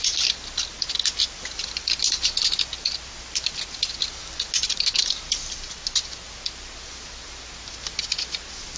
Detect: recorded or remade recorded